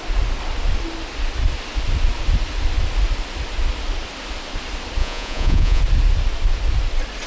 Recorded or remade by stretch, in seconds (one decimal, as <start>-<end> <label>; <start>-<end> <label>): 0.0-5.0 recorded; 5.0-5.8 remade; 5.8-7.3 recorded

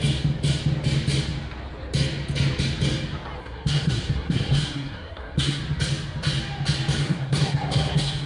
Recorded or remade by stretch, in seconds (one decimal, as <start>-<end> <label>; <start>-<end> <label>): 0.0-3.4 recorded; 3.4-5.6 remade; 5.6-7.0 recorded; 7.0-8.3 remade